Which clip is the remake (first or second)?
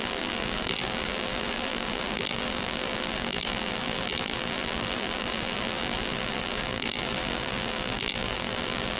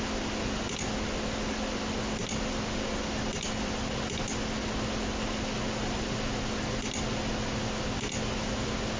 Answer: first